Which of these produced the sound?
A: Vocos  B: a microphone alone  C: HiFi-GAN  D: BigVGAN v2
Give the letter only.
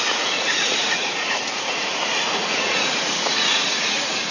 A